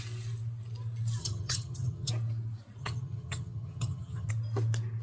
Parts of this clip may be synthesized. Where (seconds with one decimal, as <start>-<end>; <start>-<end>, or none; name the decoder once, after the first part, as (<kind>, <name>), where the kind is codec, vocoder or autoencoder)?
1.2-2.1 (vocoder, HiFi-GAN); 2.8-4.3